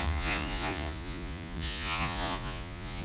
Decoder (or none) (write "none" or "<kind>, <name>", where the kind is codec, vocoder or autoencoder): vocoder, Vocos